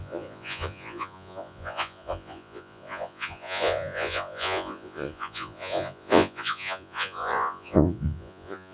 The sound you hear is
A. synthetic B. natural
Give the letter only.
A